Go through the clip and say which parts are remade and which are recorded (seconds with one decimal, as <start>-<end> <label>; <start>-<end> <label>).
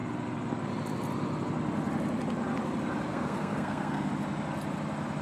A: 0.0-3.1 recorded; 3.1-4.1 remade; 4.1-5.2 recorded